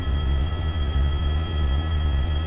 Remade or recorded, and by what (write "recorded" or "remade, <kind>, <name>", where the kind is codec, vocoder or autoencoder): remade, vocoder, Vocos